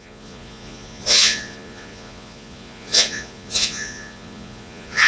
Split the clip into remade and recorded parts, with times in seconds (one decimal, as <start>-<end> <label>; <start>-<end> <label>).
0.0-5.1 remade